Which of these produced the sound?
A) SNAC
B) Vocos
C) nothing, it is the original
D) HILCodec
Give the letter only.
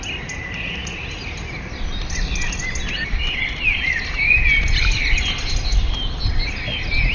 C